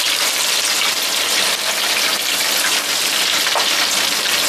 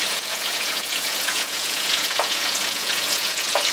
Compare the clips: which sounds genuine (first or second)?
first